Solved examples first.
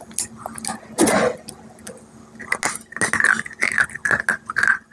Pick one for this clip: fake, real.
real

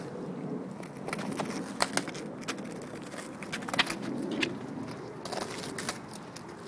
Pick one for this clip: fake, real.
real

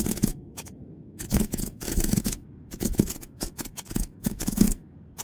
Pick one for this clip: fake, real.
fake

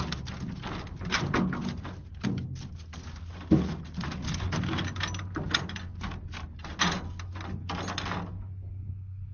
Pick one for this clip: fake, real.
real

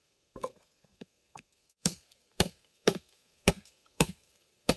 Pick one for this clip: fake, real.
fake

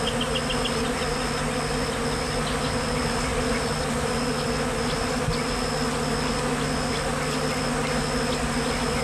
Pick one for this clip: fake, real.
real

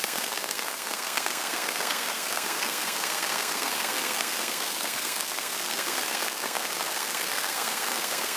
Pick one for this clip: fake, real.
fake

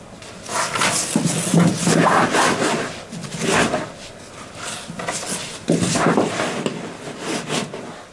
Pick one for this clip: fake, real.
real